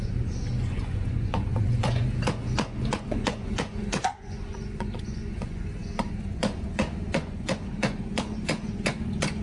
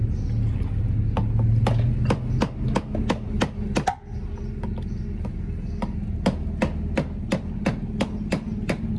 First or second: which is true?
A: second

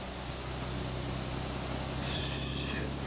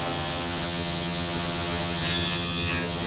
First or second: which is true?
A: first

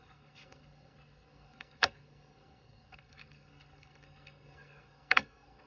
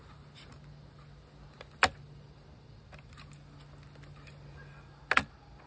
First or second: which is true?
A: second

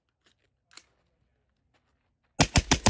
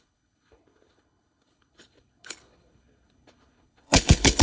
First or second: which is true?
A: first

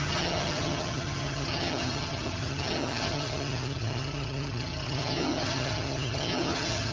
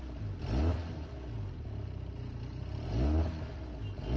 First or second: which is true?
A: second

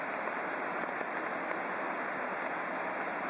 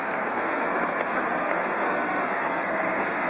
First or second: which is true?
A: first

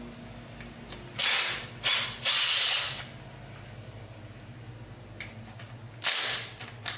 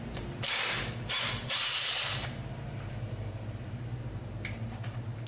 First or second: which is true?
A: first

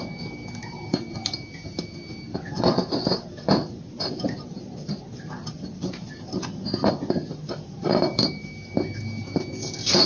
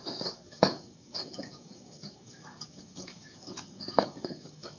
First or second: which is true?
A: first